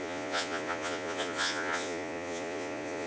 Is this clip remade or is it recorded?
remade